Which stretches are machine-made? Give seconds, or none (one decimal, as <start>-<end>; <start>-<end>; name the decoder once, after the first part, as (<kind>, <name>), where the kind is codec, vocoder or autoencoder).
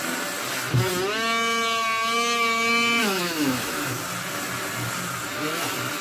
3.0-4.0 (autoencoder, DAC-VAE)